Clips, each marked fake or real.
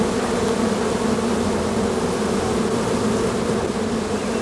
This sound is real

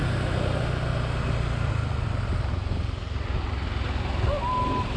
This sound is real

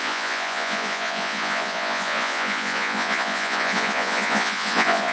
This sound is fake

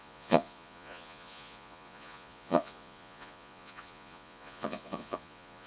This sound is fake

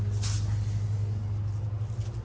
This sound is real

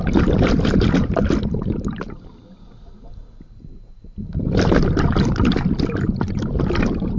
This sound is real